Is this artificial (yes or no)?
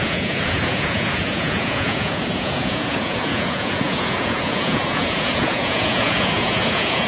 yes